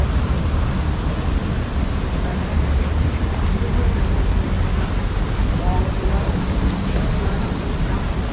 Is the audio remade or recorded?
remade